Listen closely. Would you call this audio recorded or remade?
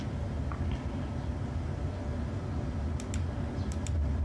recorded